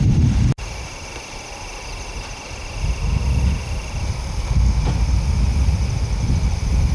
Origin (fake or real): real